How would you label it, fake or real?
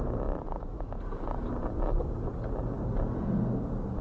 real